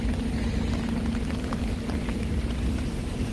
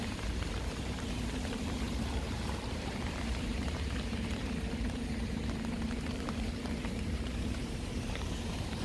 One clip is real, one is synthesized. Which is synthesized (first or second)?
second